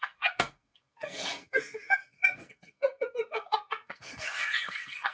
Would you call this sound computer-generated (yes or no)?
yes